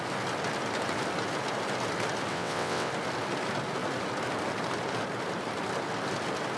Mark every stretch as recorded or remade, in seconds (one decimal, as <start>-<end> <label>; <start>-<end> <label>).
0.0-2.3 recorded; 2.3-2.9 remade; 2.9-6.6 recorded